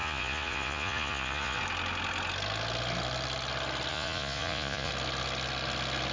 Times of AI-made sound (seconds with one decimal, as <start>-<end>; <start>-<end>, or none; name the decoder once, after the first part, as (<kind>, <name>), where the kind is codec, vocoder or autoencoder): 0.0-1.6 (vocoder, Vocos); 3.9-4.9